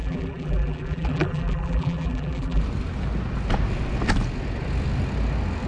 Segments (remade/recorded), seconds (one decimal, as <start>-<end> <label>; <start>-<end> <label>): 0.0-2.6 remade; 2.6-5.7 recorded